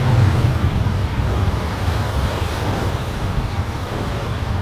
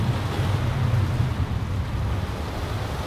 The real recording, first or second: second